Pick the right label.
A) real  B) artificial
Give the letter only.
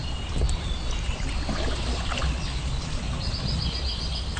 B